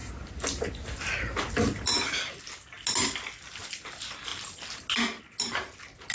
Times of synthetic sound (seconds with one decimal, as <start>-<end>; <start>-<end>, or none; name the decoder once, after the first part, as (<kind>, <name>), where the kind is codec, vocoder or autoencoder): none